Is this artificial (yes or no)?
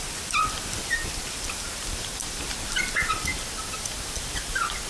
no